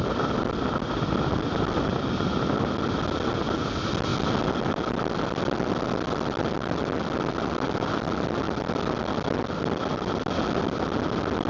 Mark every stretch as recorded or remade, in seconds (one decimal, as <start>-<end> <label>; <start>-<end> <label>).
0.0-11.5 recorded